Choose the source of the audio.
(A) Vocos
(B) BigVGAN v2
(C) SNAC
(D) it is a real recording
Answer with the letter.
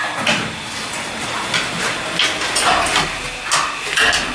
D